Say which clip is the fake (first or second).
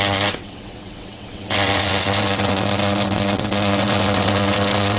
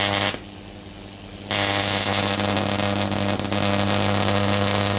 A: first